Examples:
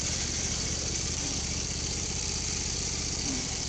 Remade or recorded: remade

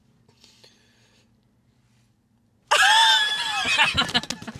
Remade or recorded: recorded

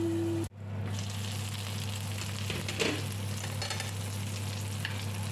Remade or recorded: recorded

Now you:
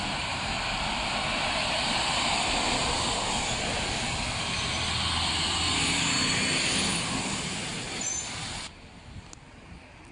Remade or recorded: recorded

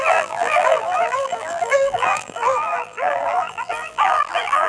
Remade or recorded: remade